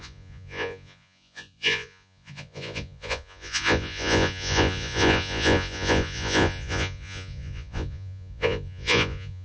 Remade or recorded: remade